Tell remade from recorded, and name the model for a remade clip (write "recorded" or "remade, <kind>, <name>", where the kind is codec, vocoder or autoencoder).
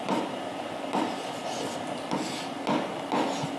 recorded